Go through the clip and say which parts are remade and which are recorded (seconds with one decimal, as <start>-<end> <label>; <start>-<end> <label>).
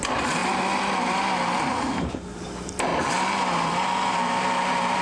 0.0-0.4 remade; 0.4-1.6 recorded; 1.6-2.9 remade; 2.9-4.1 recorded; 4.1-5.0 remade